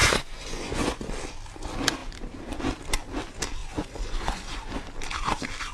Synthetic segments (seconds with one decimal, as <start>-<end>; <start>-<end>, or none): 0.0-1.1; 3.6-4.7